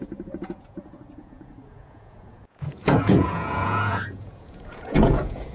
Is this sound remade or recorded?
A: remade